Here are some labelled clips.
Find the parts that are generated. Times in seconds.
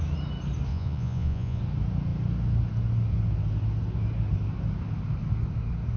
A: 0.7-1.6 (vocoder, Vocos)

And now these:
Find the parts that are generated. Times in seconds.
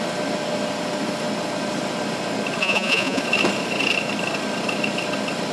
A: 2.6-3.2 (vocoder, Vocos)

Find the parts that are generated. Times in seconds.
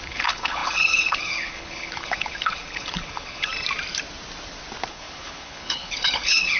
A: 0.0-3.5 (codec, HILCodec); 4.9-6.6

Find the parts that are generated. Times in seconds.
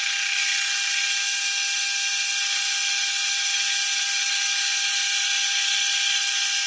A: none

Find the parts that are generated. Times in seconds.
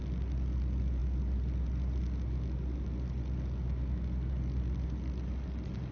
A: none